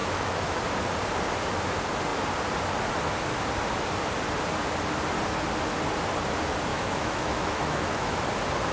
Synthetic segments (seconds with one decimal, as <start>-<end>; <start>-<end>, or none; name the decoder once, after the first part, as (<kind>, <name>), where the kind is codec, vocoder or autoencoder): 0.0-0.6 (autoencoder, DAC-VAE); 6.7-8.2

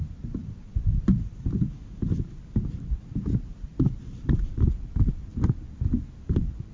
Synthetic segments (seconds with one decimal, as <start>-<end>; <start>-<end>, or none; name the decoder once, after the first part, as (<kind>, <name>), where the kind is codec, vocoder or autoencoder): none

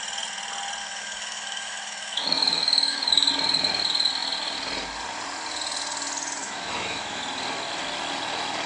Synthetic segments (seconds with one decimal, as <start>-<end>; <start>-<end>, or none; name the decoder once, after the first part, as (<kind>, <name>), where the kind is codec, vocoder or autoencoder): 0.8-3.3 (autoencoder, DAC-VAE); 6.4-7.2